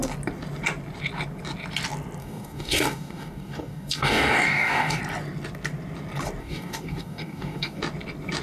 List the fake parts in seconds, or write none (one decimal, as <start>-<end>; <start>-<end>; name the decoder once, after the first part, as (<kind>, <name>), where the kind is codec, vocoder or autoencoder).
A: 2.2-5.0 (codec, DAC); 6.4-7.8